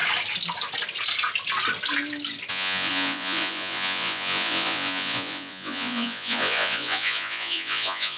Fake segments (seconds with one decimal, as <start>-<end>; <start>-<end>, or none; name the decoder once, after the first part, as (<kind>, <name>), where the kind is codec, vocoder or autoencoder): 2.5-8.2 (vocoder, Vocos)